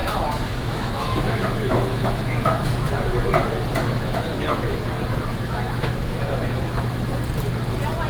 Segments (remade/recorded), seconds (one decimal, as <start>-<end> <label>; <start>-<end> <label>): 0.0-2.9 remade; 2.9-3.7 recorded; 3.7-4.8 remade; 4.8-5.3 recorded; 5.3-7.0 remade; 7.0-8.1 recorded